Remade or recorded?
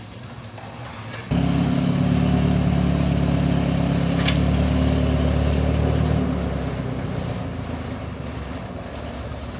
recorded